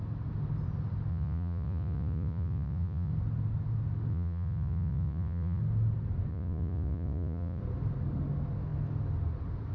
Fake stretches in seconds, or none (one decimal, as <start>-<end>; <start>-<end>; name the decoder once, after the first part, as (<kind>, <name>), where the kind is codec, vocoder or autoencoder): 1.1-3.1 (vocoder, Vocos); 4.1-5.6; 6.3-7.6